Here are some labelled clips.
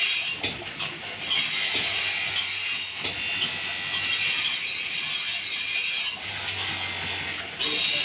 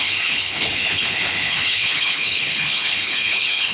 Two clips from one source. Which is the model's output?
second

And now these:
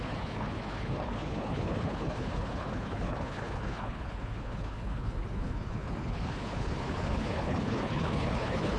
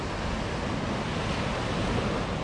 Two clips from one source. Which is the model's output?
first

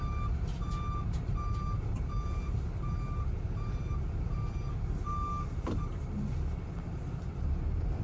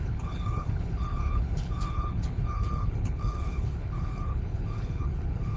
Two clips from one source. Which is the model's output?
second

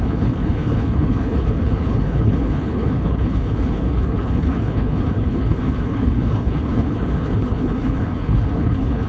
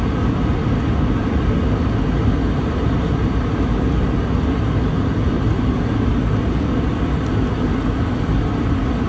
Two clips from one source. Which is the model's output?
first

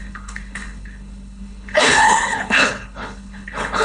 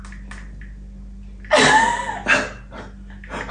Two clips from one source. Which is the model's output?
first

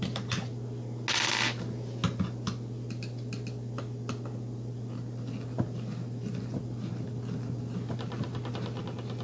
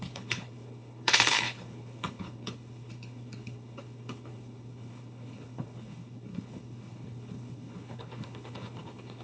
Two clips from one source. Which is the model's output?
second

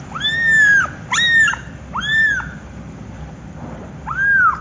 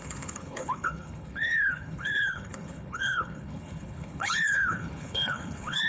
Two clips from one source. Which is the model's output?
second